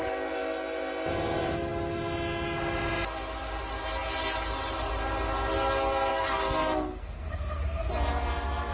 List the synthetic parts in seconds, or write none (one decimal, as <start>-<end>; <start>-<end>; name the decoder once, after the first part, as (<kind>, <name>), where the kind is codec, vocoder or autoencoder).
6.1-7.8 (codec, SNAC)